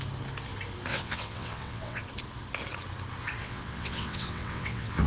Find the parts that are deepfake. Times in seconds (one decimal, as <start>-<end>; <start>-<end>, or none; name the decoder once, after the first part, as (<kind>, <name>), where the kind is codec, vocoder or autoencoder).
0.9-2.0 (vocoder, WaveNeXt); 3.4-5.1